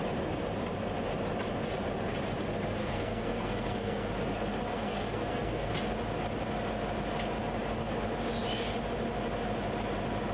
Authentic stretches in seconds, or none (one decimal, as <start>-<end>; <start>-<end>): 0.0-2.8; 4.1-4.7; 5.7-10.3